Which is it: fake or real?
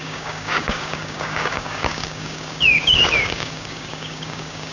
fake